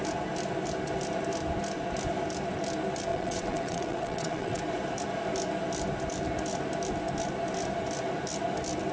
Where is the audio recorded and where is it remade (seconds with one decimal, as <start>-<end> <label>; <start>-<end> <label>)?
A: 0.0-3.1 recorded; 3.1-4.6 remade; 4.6-8.9 recorded